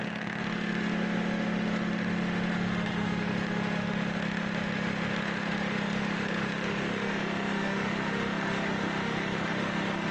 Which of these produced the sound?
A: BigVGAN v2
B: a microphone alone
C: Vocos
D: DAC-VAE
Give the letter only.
D